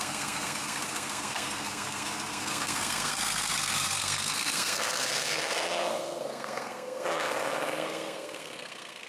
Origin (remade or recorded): remade